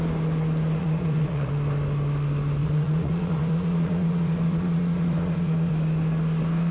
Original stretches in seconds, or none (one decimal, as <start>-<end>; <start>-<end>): 0.0-0.8; 1.5-2.6; 5.7-6.7